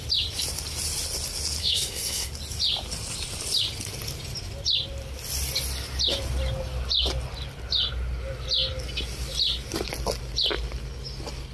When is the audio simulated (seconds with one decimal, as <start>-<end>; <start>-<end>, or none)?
1.6-2.3